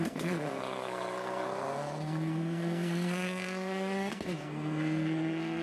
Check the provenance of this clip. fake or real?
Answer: fake